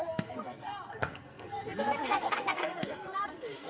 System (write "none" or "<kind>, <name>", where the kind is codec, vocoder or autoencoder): codec, SNAC